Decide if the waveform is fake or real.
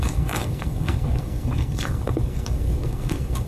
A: fake